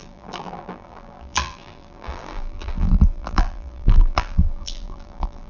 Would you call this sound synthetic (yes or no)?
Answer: yes